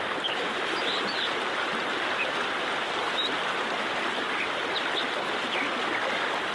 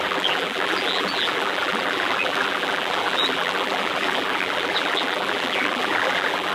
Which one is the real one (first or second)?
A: first